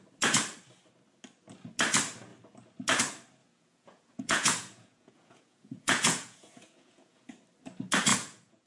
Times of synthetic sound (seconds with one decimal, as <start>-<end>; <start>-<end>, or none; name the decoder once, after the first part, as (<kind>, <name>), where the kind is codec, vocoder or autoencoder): 3.4-7.3 (vocoder, Vocos); 8.1-8.7